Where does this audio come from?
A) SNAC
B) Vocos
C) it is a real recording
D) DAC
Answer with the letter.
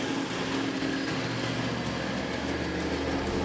C